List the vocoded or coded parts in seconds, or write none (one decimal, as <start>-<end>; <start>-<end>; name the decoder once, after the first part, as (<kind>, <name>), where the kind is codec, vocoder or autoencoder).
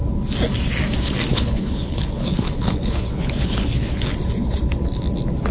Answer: 1.3-4.0 (codec, HILCodec)